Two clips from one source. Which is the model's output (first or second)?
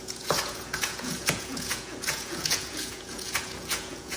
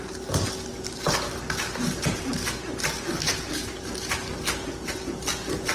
first